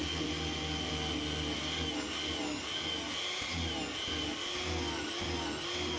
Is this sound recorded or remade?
recorded